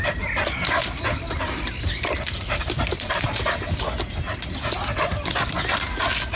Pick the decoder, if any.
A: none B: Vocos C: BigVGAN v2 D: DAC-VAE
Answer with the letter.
A